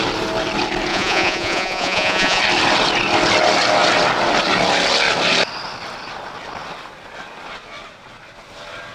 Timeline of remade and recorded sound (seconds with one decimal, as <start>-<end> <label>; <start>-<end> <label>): 0.0-0.9 recorded; 0.9-2.4 remade; 2.4-8.9 recorded